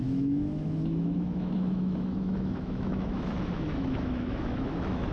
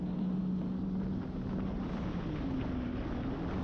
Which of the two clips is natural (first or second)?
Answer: second